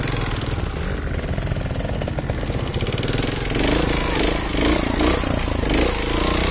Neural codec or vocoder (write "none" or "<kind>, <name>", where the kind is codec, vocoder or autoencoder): none